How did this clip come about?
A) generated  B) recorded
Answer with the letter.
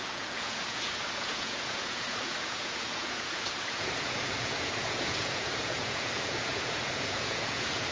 A